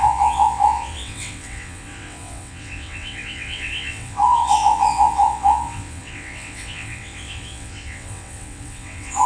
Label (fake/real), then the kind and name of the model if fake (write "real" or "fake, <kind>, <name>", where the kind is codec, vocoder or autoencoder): fake, vocoder, WaveNeXt